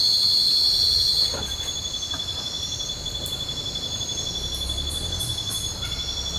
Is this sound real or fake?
real